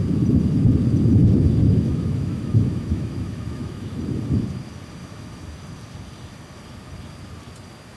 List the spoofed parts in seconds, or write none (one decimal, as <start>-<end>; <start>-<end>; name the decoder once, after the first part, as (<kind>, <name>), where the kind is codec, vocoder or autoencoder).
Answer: 1.6-4.0 (autoencoder, DAC-VAE); 5.0-5.5